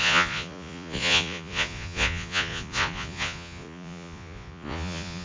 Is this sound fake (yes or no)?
yes